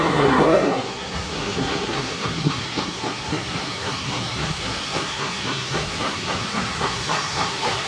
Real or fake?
fake